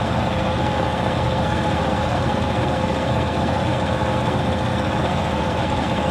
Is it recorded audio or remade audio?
remade